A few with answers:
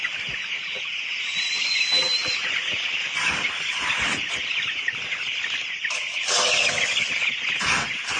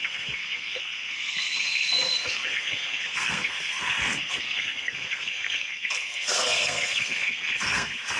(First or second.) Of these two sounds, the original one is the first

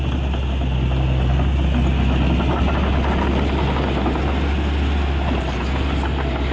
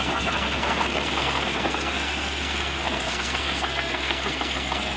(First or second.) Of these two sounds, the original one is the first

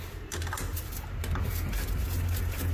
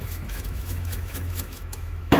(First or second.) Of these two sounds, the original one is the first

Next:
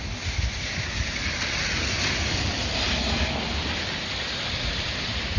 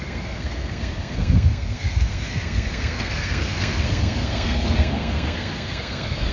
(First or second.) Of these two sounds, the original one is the first